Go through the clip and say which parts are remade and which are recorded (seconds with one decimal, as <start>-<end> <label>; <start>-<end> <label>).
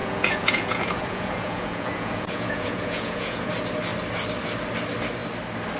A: 0.0-3.5 remade; 3.5-5.8 recorded